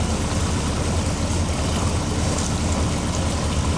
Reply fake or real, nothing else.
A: real